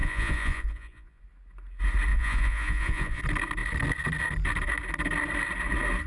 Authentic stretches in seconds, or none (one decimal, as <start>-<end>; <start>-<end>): 1.2-2.1; 3.2-6.1